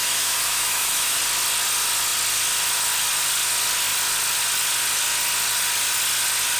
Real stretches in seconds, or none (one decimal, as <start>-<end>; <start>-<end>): 1.2-6.6